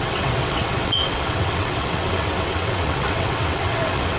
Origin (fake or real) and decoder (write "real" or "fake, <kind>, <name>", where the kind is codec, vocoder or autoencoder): fake, vocoder, WaveNeXt